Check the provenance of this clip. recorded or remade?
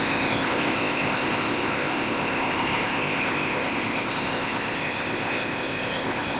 remade